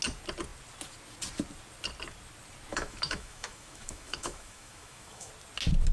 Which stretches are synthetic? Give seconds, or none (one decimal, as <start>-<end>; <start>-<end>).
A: 2.7-5.3